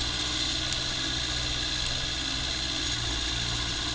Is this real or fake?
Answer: real